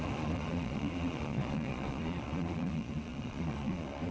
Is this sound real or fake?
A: fake